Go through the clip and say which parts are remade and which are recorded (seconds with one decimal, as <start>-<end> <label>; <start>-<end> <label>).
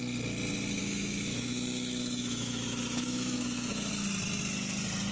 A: 0.0-0.8 recorded; 0.8-3.9 remade; 3.9-5.1 recorded